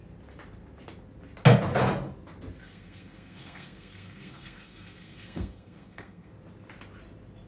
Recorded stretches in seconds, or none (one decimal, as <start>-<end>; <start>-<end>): 0.0-2.6; 6.3-7.5